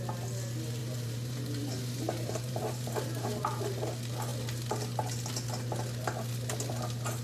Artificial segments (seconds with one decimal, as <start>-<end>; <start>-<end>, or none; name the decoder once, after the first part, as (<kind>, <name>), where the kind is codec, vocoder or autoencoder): 0.8-3.6 (vocoder, BigVGAN v2)